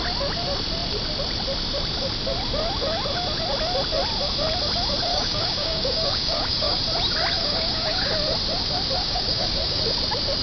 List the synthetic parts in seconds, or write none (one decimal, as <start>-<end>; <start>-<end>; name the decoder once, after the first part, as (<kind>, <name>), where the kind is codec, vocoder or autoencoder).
5.1-6.8 (codec, DAC); 7.4-8.1; 9.0-9.8